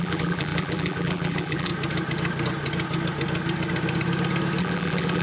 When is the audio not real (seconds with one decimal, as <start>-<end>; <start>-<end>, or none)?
0.0-1.7; 4.6-5.2